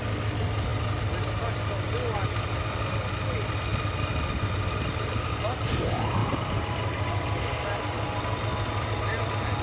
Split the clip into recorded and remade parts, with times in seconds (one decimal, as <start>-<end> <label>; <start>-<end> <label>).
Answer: 0.0-6.2 recorded; 6.2-7.4 remade; 7.4-9.6 recorded